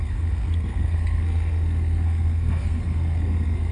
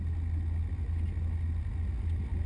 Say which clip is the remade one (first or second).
first